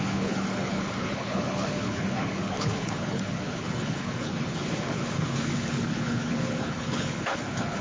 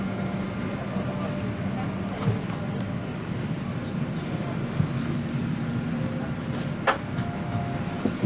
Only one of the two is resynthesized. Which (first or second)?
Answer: first